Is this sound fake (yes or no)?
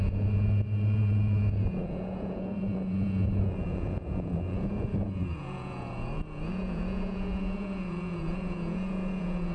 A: yes